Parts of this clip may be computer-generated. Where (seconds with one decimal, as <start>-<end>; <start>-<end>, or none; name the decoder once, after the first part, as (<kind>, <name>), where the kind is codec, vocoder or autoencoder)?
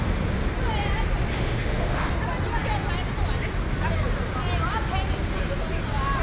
1.3-2.1 (autoencoder, DAC-VAE)